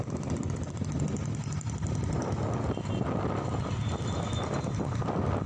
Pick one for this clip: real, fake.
real